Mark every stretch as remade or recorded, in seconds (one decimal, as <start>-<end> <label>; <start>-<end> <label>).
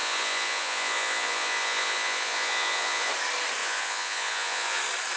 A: 0.0-3.1 remade; 3.1-3.6 recorded; 3.6-4.8 remade; 4.8-5.2 recorded